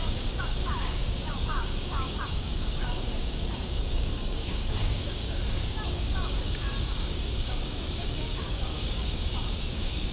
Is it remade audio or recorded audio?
remade